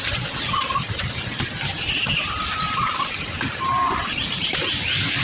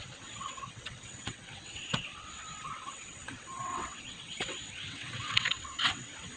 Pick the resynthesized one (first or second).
second